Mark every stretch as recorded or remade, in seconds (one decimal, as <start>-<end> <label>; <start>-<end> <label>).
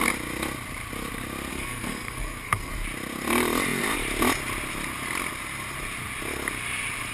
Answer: 0.0-1.5 recorded; 1.5-2.7 remade; 2.7-7.1 recorded